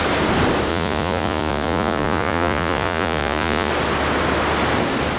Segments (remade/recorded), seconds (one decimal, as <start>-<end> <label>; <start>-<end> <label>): 0.0-0.7 recorded; 0.7-3.7 remade; 3.7-5.2 recorded